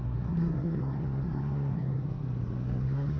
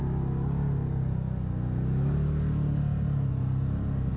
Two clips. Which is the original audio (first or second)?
second